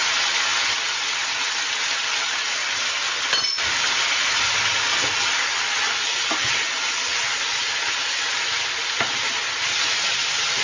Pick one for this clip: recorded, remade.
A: recorded